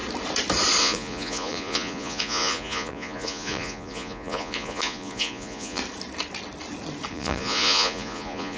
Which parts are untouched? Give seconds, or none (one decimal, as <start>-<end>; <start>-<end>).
0.0-0.8; 5.8-7.1